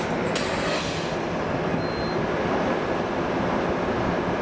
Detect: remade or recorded recorded